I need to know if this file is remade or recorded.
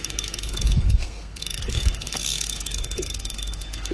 remade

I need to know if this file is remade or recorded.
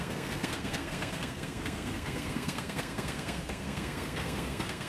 remade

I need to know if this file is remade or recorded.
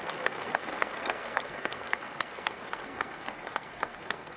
remade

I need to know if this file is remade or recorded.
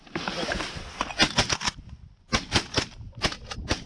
recorded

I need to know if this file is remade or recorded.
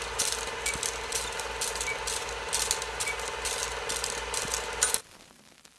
recorded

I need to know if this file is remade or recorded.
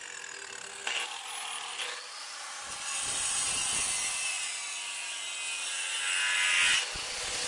recorded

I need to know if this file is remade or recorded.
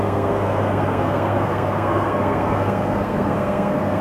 remade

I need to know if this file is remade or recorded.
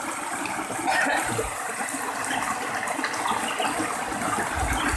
recorded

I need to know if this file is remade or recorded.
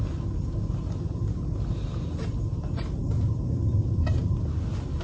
recorded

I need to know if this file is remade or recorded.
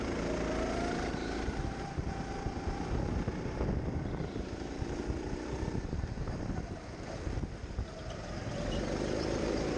recorded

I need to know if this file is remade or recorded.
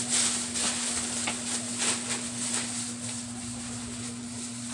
recorded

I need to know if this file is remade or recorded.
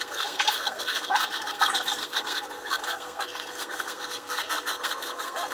remade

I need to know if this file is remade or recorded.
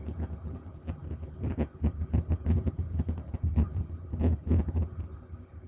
recorded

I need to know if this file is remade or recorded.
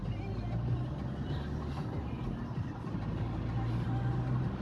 recorded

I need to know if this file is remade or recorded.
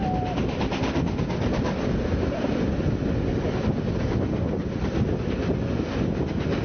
recorded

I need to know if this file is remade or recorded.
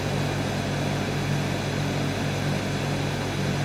recorded